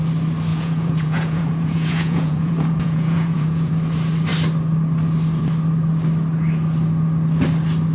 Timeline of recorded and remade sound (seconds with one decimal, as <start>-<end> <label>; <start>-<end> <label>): 0.0-0.5 recorded; 0.5-3.7 remade; 3.7-7.9 recorded